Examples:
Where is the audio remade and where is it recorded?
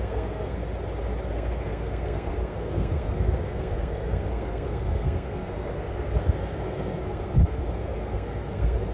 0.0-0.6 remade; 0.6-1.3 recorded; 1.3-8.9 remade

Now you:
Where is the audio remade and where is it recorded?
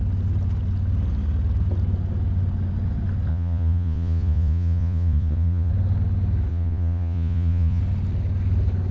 0.0-3.3 recorded; 3.3-5.7 remade; 5.7-6.5 recorded; 6.5-7.8 remade; 7.8-8.9 recorded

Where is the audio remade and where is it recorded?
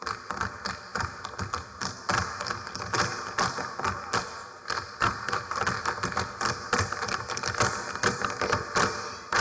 0.0-9.4 remade